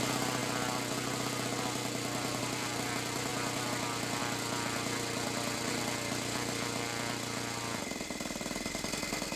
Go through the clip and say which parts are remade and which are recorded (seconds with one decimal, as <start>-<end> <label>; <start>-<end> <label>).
0.0-9.4 recorded